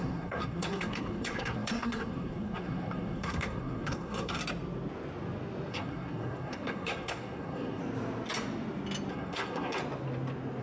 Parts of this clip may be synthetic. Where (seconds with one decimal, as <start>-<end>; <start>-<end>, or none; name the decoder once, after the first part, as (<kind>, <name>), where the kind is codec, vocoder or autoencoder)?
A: 0.0-4.4 (codec, SNAC); 5.7-7.8; 9.1-9.8